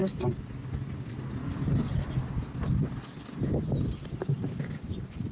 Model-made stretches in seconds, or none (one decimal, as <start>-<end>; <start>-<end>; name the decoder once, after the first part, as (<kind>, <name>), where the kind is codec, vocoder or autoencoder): none